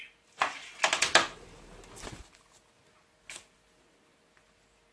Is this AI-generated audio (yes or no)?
no